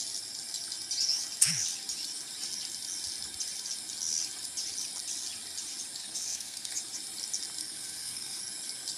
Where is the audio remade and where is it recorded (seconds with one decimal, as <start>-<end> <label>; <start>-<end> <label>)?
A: 0.0-6.0 recorded; 6.0-6.7 remade; 6.7-7.6 recorded; 7.6-8.4 remade; 8.4-9.0 recorded